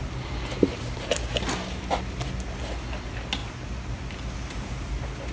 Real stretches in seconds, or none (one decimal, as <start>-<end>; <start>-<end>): 0.0-5.3